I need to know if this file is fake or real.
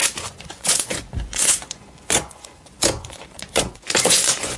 fake